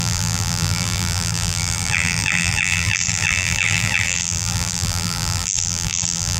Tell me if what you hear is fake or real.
fake